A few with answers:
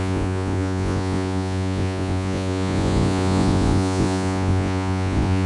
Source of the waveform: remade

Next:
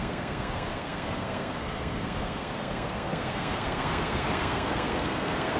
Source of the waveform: remade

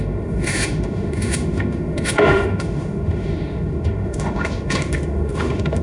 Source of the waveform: remade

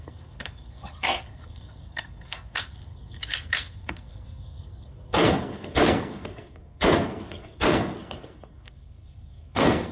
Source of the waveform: remade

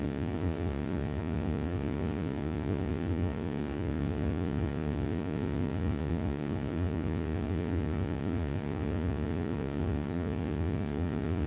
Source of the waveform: remade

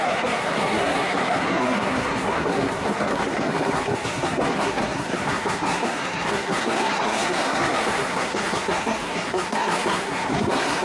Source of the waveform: remade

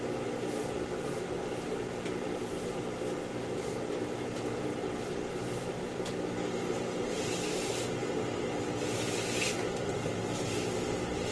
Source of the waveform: recorded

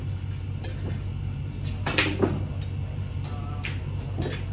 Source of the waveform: recorded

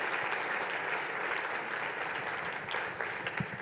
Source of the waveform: recorded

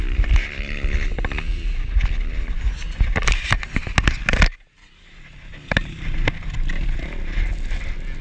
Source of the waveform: recorded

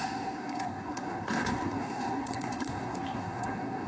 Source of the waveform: remade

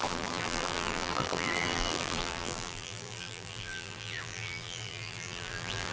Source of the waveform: remade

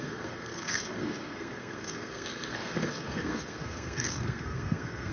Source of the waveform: remade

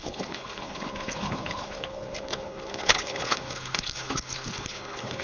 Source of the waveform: remade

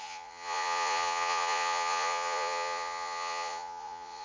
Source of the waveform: remade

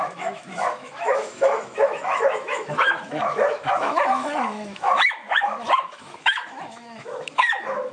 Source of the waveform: remade